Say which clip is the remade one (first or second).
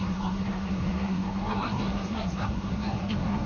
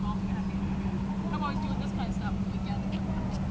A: first